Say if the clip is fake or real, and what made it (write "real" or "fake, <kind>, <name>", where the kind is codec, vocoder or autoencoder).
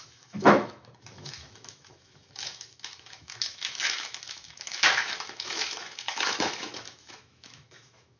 fake, autoencoder, DAC-VAE